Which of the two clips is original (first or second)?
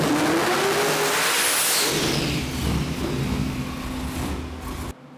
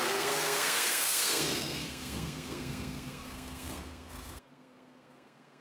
first